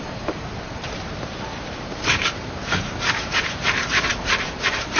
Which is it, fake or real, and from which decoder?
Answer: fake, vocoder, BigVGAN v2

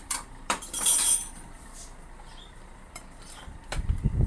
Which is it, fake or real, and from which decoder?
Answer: fake, vocoder, BigVGAN v2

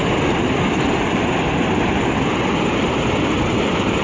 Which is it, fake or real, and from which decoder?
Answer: real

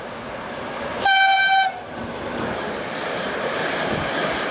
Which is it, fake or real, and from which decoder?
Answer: fake, vocoder, BigVGAN v2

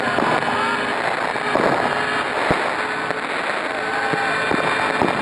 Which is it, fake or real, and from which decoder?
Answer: real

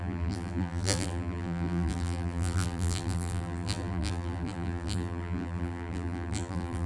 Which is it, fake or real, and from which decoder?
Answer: fake, vocoder, BigVGAN v2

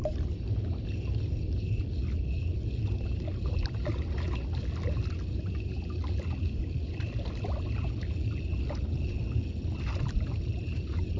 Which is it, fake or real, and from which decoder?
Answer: real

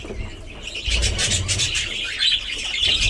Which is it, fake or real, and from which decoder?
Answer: real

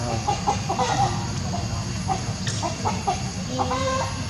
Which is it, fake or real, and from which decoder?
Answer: real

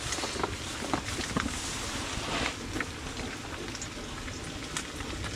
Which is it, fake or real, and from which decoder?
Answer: real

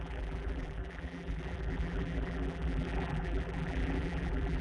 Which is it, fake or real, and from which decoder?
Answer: fake, vocoder, BigVGAN v2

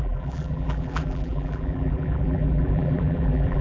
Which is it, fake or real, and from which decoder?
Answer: fake, vocoder, BigVGAN v2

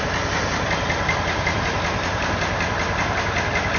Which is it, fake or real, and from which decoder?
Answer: real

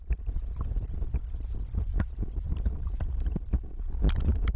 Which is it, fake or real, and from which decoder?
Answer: real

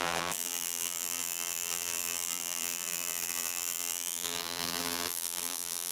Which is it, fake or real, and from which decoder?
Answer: fake, vocoder, BigVGAN v2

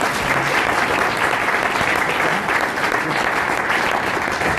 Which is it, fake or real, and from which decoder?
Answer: fake, vocoder, BigVGAN v2